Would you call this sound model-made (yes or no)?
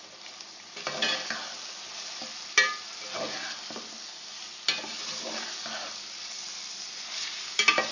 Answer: no